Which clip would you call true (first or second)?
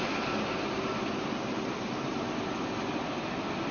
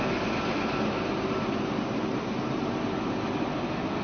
second